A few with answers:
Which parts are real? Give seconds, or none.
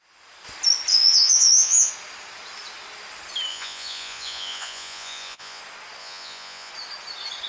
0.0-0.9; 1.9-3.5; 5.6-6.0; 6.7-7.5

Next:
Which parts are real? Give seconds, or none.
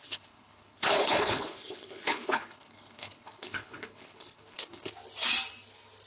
4.9-6.1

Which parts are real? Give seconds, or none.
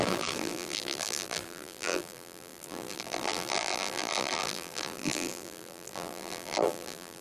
none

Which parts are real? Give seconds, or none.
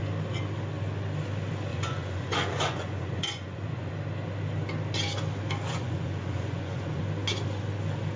0.0-1.7; 3.9-5.7; 7.0-8.2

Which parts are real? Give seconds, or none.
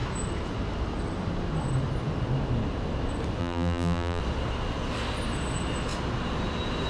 0.0-3.4; 4.2-6.9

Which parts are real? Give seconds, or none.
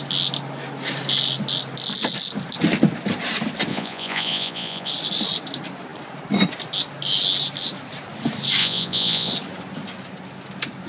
0.0-3.7; 4.9-8.6; 9.3-10.9